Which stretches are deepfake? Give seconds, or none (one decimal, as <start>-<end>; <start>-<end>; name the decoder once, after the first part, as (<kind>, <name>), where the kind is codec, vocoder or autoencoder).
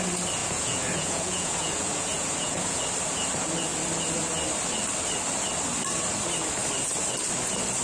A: 0.4-2.8 (vocoder, Vocos)